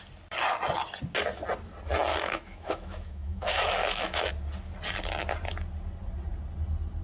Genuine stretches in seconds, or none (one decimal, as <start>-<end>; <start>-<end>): 0.0-2.1; 4.3-7.0